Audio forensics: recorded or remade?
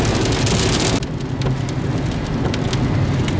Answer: recorded